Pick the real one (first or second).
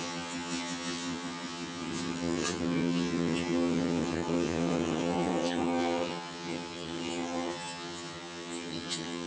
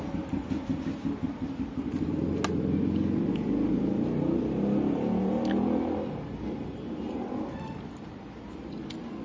second